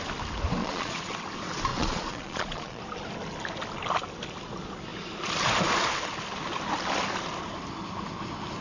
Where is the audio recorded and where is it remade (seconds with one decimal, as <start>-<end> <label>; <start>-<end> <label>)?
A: 0.0-0.6 recorded; 0.6-1.1 remade; 1.1-1.7 recorded; 1.7-2.8 remade; 2.8-8.6 recorded